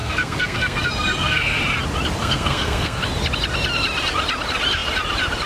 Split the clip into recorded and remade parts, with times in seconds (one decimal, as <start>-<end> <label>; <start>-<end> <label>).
0.0-1.6 remade; 1.6-2.2 recorded; 2.2-3.0 remade; 3.0-5.5 recorded